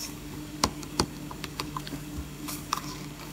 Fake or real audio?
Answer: fake